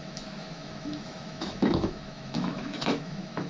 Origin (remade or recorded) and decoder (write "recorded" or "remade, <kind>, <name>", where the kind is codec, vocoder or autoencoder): remade, autoencoder, DAC-VAE